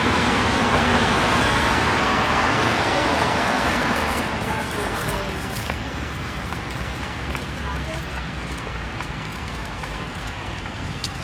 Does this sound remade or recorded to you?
remade